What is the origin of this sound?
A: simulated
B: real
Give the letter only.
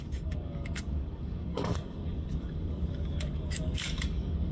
A